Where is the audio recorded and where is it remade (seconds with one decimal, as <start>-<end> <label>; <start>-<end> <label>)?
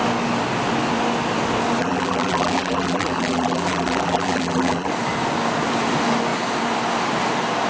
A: 0.0-1.8 recorded; 1.8-4.9 remade; 4.9-7.7 recorded